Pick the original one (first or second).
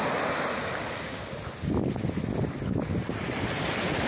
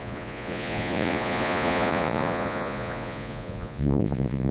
first